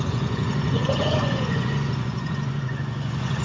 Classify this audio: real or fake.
fake